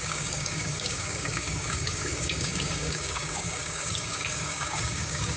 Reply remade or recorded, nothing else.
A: remade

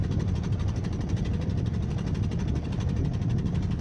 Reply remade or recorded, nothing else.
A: recorded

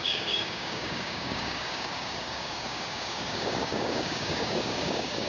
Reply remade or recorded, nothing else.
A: remade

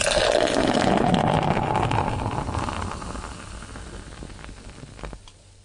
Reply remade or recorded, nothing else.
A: recorded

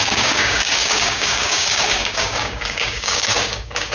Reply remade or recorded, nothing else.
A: remade